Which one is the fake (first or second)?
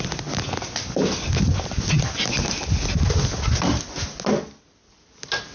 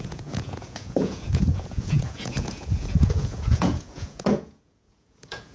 second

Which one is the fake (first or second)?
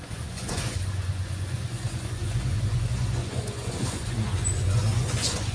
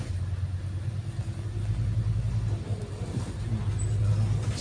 first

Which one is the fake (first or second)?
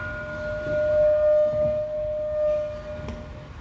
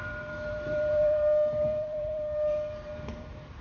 second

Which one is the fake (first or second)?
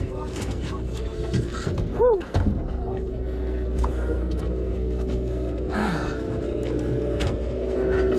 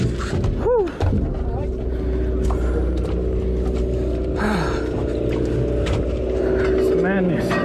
first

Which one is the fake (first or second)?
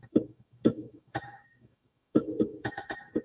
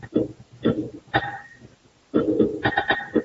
first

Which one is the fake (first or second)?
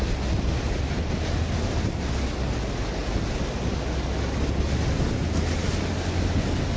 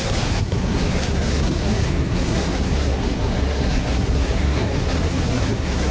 second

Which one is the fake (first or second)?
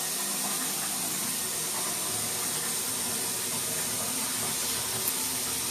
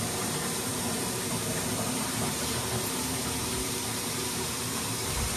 second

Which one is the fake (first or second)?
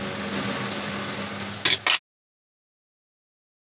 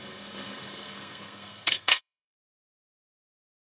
second